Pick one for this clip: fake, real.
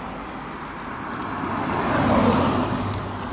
real